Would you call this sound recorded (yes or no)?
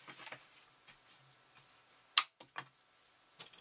yes